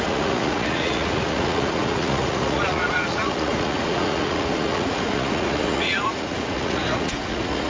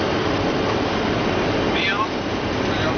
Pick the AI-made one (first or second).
first